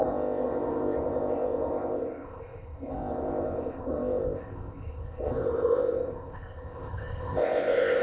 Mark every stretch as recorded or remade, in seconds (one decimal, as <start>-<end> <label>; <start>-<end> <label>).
0.0-8.0 remade